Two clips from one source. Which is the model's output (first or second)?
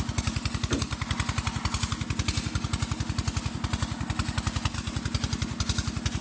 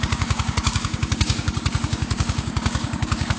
second